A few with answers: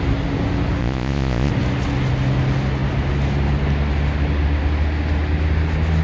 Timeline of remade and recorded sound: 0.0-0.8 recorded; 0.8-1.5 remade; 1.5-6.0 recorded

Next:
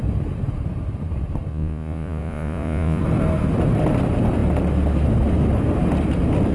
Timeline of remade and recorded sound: 0.0-1.5 recorded; 1.5-3.0 remade; 3.0-6.5 recorded

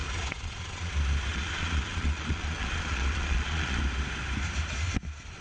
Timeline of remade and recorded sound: 0.0-0.9 remade; 0.9-1.3 recorded; 1.3-3.8 remade; 3.8-5.4 recorded

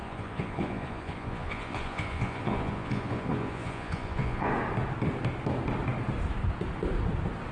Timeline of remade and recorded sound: 0.0-4.5 remade; 4.5-7.5 recorded

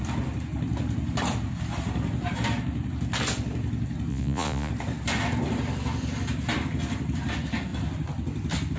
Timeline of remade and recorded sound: 0.0-4.1 recorded; 4.1-4.7 remade; 4.7-8.8 recorded

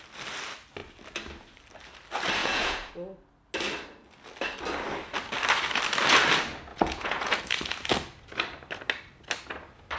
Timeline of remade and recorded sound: 0.0-2.4 recorded; 2.4-2.9 remade; 2.9-6.7 recorded; 6.7-7.4 remade; 7.4-10.0 recorded